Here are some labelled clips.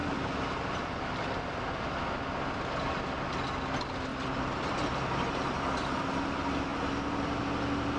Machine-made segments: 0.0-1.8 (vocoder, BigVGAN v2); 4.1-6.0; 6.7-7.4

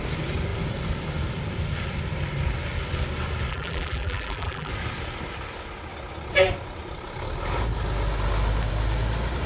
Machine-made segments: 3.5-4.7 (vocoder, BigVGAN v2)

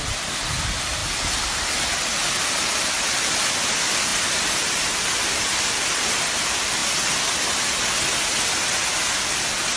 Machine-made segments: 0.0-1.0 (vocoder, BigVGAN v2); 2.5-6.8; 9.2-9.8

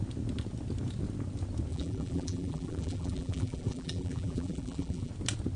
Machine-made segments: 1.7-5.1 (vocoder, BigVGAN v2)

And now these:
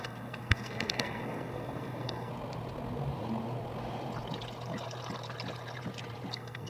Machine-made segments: 0.0-2.3 (codec, SNAC); 6.3-6.7

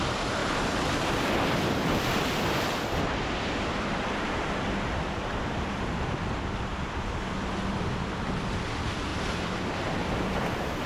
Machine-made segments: 0.0-0.4 (vocoder, BigVGAN v2); 1.1-10.9